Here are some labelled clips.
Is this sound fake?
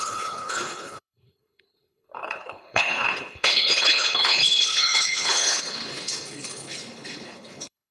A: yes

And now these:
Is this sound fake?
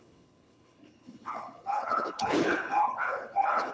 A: yes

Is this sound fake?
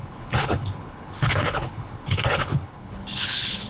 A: yes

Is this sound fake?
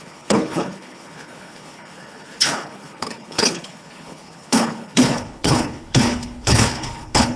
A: yes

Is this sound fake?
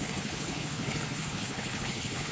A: yes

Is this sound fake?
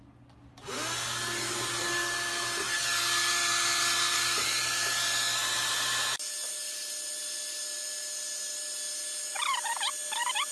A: no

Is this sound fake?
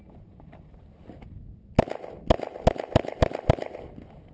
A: no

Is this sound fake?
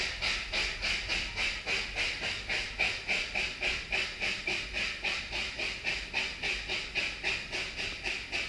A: no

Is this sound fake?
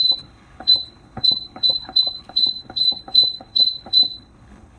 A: yes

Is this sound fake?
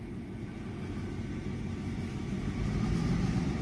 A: no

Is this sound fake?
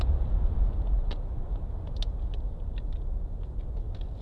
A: no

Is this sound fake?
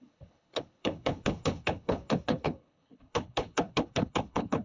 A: yes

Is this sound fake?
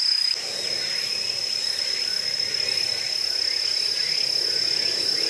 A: no